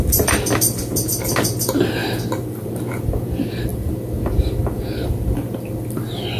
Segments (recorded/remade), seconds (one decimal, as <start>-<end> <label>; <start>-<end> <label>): 0.0-6.4 recorded